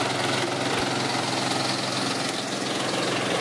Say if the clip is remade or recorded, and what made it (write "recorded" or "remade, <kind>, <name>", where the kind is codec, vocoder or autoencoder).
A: recorded